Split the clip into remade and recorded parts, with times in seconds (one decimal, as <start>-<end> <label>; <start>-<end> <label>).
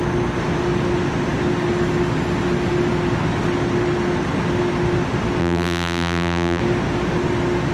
0.0-5.4 recorded; 5.4-6.6 remade; 6.6-7.7 recorded